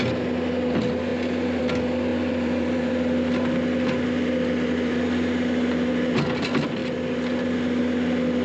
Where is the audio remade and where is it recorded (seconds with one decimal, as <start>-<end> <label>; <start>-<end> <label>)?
0.0-2.1 recorded; 2.1-2.9 remade; 2.9-8.4 recorded